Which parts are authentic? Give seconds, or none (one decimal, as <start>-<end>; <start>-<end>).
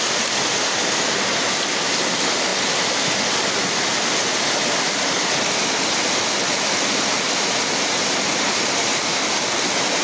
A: 0.0-10.0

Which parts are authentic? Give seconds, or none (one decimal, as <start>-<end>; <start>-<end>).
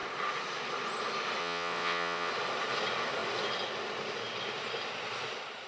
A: 0.0-1.4; 2.3-5.7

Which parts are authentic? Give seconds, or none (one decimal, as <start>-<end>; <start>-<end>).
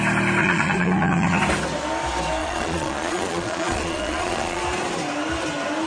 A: 0.0-0.4; 1.4-2.4; 4.6-5.9